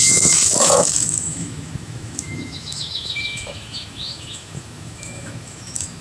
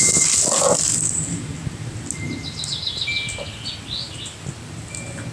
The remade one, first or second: first